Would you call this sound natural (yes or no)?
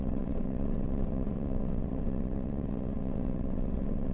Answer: no